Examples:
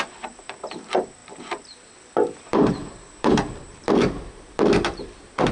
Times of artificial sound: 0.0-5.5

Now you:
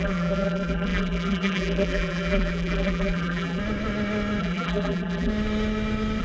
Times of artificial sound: 0.0-3.6; 4.4-5.3

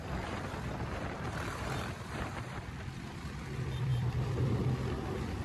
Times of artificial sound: 0.0-5.4